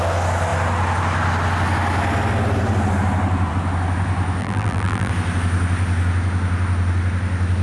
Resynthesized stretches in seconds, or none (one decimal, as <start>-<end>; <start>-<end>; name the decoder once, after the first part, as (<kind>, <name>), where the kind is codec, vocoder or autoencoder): 4.4-5.1 (vocoder, BigVGAN v2)